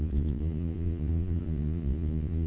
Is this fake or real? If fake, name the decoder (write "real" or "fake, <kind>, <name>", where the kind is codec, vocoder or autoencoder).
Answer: fake, vocoder, Vocos